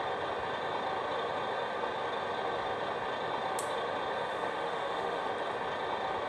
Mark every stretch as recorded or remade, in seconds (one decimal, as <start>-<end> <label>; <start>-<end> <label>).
0.0-4.3 recorded; 4.3-5.3 remade; 5.3-6.3 recorded